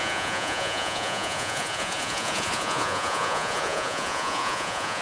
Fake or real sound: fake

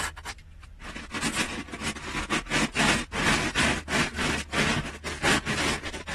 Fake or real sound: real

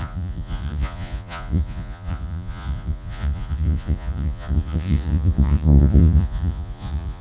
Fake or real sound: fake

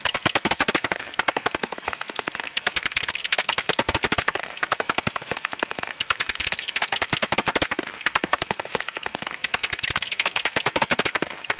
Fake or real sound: fake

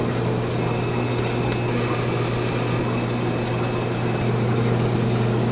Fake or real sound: real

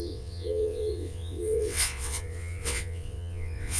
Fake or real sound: fake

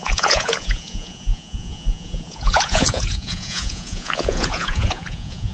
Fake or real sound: fake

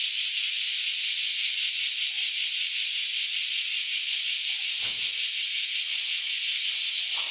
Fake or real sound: real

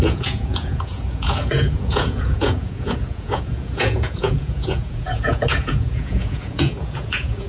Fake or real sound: fake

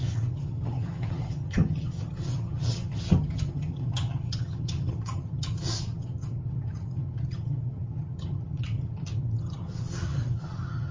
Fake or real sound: fake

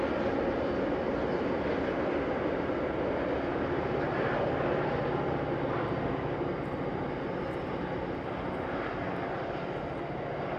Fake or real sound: real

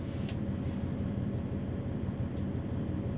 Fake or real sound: real